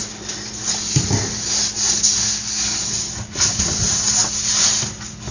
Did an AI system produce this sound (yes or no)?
no